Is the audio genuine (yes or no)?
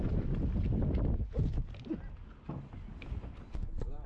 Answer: yes